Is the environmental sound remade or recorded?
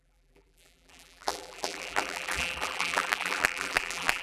remade